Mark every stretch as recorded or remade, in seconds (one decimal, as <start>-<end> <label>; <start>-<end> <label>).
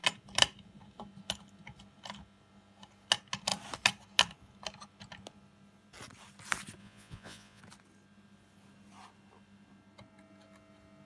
0.0-6.8 recorded; 6.8-7.6 remade; 7.6-11.1 recorded